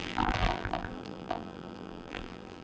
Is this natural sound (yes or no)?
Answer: no